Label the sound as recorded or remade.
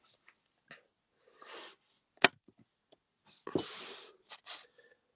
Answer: recorded